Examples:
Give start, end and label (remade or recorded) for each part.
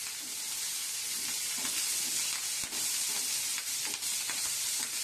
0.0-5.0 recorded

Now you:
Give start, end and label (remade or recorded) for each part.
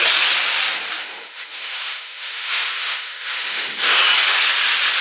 0.0-1.0 recorded; 1.0-4.0 remade; 4.0-5.0 recorded